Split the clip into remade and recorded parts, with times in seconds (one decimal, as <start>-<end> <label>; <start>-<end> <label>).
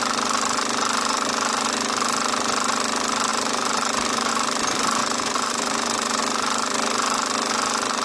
0.0-3.3 recorded; 3.3-4.3 remade; 4.3-5.0 recorded; 5.0-6.2 remade; 6.2-8.0 recorded